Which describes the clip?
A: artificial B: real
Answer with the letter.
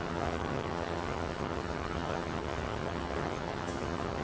A